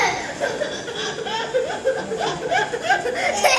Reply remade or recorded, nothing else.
recorded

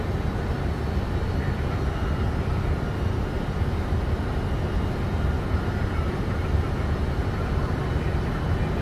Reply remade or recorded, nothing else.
recorded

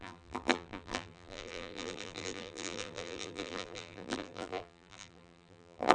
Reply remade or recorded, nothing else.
remade